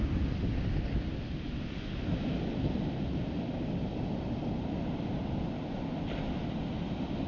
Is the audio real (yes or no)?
yes